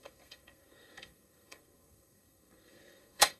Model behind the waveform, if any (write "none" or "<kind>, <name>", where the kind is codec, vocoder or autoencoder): codec, SNAC